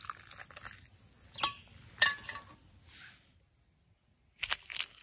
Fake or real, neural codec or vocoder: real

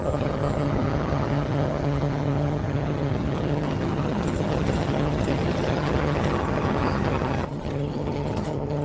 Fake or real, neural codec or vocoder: fake, vocoder, HiFi-GAN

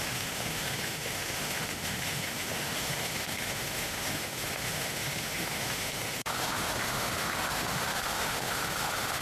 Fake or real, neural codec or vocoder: fake, autoencoder, DAC-VAE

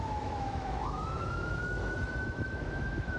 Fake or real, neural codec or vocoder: fake, autoencoder, DAC-VAE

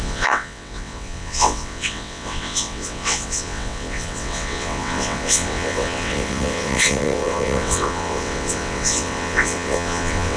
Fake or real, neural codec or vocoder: fake, vocoder, WaveNeXt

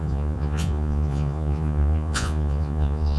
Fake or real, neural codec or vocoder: fake, vocoder, Vocos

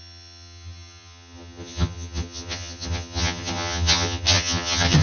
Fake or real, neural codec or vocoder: fake, vocoder, HiFi-GAN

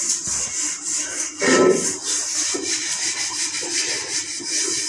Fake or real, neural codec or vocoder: real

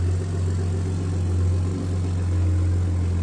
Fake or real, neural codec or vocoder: real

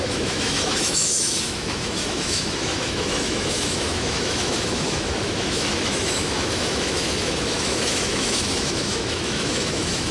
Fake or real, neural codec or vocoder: fake, autoencoder, DAC-VAE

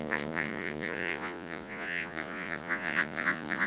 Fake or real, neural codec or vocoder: fake, vocoder, Vocos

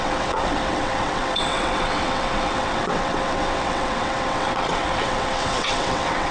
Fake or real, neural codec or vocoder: fake, vocoder, WaveNeXt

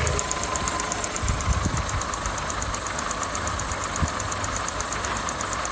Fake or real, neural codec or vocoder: real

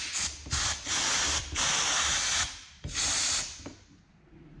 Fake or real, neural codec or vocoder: real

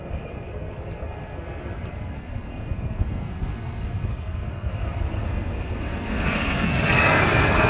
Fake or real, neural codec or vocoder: fake, codec, SNAC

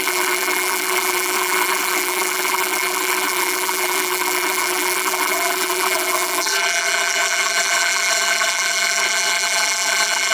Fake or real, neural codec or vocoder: fake, vocoder, BigVGAN v2